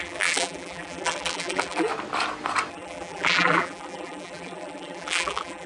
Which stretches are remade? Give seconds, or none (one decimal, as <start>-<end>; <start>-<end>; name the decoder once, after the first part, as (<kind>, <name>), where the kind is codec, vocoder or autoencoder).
0.0-1.9 (vocoder, BigVGAN v2); 2.7-5.7